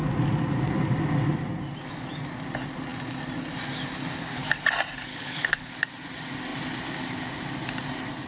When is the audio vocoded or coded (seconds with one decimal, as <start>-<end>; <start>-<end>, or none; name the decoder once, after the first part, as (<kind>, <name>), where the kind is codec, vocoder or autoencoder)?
5.1-5.7 (codec, HILCodec)